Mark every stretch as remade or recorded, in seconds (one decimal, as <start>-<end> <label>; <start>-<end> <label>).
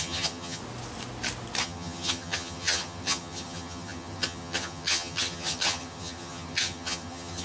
0.0-0.6 remade; 0.6-1.6 recorded; 1.6-7.4 remade